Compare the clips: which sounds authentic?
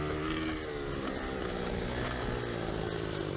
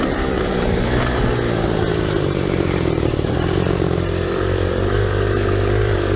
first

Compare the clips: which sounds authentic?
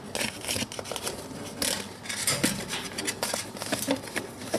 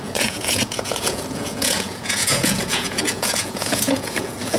first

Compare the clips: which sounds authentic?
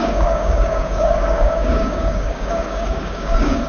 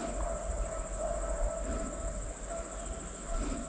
second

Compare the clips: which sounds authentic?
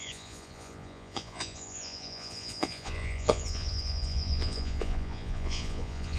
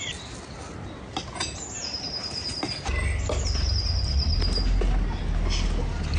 second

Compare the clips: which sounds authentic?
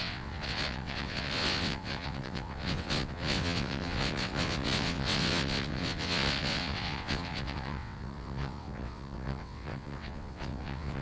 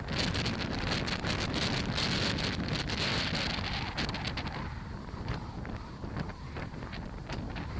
second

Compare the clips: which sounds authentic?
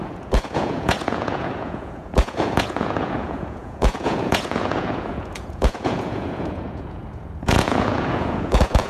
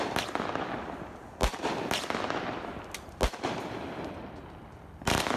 second